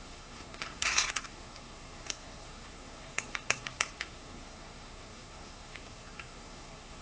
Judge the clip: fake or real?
fake